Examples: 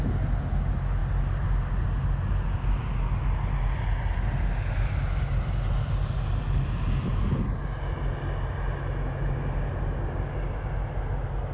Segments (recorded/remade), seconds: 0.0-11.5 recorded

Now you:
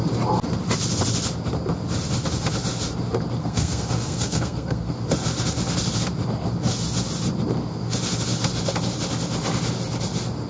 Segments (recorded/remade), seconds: 0.0-3.4 recorded; 3.4-4.9 remade; 4.9-10.5 recorded

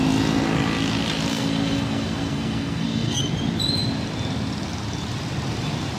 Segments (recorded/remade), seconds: 0.0-1.3 recorded; 1.3-3.2 remade; 3.2-6.0 recorded

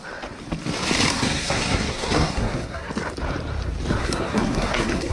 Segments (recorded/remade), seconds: 0.0-1.1 recorded; 1.1-2.9 remade; 2.9-4.0 recorded; 4.0-5.1 remade

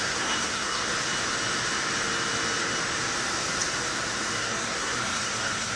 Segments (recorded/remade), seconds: 0.0-0.9 remade; 0.9-4.4 recorded; 4.4-5.8 remade

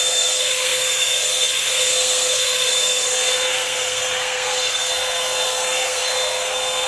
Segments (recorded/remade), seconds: 0.0-6.9 remade